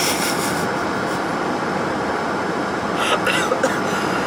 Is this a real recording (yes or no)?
yes